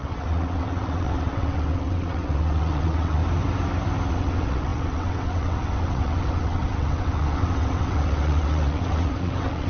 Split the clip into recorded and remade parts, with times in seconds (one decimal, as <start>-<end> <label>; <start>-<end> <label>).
0.0-3.2 remade; 3.2-4.1 recorded; 4.1-9.7 remade